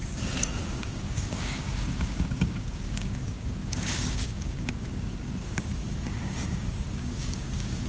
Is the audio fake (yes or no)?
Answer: yes